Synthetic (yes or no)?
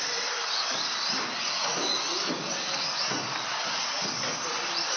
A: no